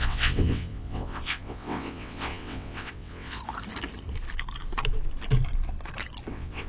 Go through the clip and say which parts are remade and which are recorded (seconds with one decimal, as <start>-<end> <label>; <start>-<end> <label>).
0.0-3.4 remade; 3.4-6.3 recorded; 6.3-6.7 remade